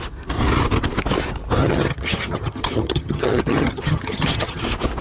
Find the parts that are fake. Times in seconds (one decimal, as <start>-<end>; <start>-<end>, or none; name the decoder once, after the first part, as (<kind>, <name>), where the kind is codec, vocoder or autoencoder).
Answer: 1.6-4.6 (vocoder, HiFi-GAN)